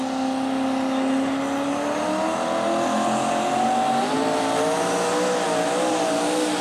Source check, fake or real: real